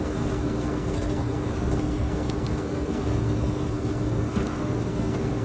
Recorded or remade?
remade